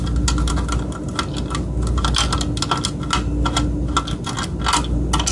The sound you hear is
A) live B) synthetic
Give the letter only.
A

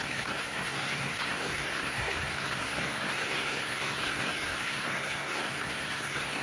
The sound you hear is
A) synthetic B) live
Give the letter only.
A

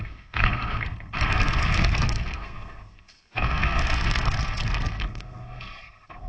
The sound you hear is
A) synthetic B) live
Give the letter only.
A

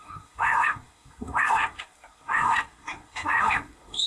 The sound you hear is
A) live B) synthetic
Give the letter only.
B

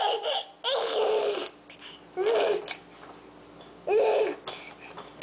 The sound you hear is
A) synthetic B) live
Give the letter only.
B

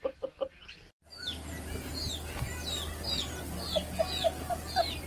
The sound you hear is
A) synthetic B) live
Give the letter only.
B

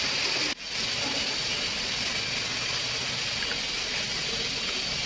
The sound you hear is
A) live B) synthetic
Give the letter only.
A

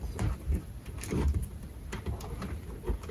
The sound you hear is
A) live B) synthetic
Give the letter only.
A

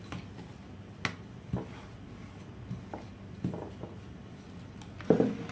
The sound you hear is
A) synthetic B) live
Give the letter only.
B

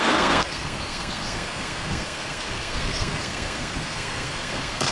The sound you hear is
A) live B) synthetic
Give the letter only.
B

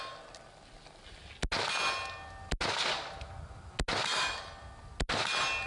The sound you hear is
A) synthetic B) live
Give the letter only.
B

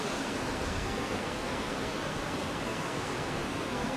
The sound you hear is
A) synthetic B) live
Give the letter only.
A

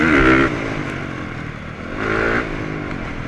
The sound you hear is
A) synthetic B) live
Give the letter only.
B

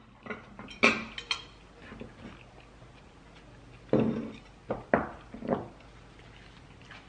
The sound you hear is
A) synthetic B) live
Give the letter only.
B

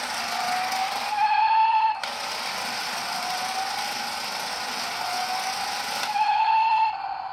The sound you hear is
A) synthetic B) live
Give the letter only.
B